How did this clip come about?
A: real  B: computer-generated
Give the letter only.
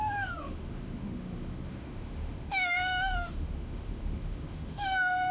B